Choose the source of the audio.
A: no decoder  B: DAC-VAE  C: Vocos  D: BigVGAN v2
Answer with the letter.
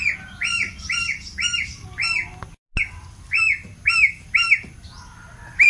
A